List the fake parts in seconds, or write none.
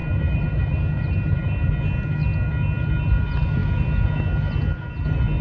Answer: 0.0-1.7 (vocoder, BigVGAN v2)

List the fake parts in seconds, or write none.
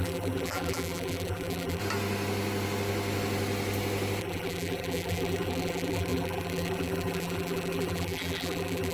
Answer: 0.0-1.8 (vocoder, BigVGAN v2); 4.2-8.9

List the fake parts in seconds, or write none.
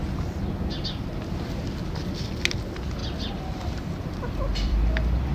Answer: 3.0-5.3 (vocoder, BigVGAN v2)